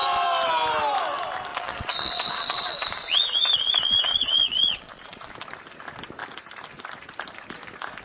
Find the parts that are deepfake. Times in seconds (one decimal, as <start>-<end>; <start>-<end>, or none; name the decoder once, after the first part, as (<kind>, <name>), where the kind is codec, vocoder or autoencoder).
1.5-5.3 (vocoder, Vocos)